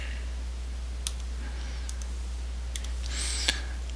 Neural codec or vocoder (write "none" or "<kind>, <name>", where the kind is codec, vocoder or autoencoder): none